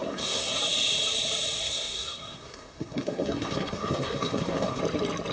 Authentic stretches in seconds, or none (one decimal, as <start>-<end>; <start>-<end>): 0.6-1.6; 4.8-5.3